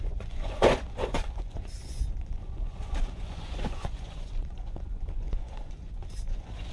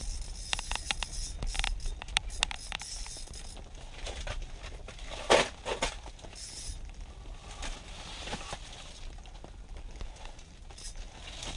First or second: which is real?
second